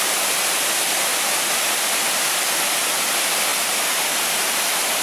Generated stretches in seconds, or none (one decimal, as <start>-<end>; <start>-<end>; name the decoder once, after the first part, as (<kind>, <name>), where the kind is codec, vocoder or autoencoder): 0.0-5.0 (vocoder, BigVGAN v2)